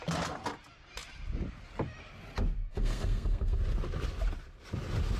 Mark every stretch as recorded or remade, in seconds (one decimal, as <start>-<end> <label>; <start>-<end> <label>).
0.0-2.7 recorded; 2.7-3.6 remade; 3.6-5.2 recorded